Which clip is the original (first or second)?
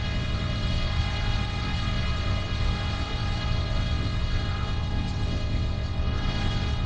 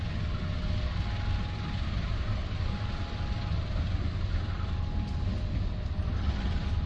second